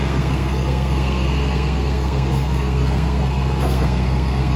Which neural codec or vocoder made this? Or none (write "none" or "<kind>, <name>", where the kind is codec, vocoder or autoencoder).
codec, SNAC